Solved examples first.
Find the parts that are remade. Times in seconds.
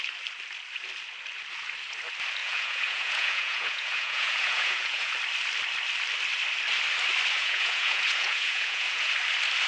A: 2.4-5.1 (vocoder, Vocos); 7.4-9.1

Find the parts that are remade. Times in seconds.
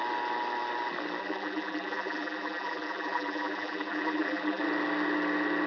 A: 1.2-4.6 (vocoder, BigVGAN v2)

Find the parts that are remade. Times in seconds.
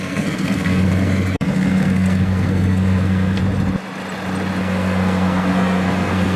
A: 0.0-3.4 (codec, SNAC); 4.6-6.4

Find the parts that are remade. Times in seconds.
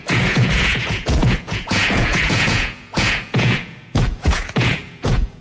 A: 0.0-5.4 (vocoder, Vocos)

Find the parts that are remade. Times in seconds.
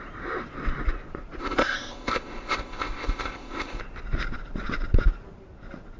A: 1.4-3.8 (codec, ZipCodec)